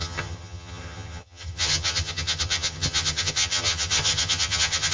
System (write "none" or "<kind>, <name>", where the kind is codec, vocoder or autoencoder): vocoder, HiFi-GAN